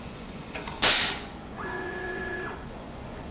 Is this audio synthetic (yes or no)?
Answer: yes